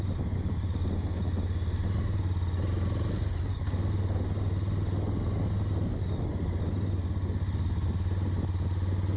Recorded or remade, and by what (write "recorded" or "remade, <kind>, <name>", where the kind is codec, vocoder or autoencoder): recorded